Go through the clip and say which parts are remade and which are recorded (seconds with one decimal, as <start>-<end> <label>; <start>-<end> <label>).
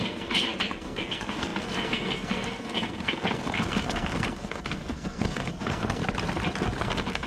0.0-6.0 remade; 6.0-6.8 recorded; 6.8-7.3 remade